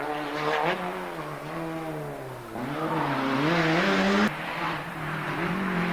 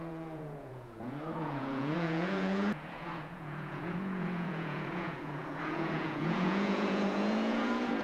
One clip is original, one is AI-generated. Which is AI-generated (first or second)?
second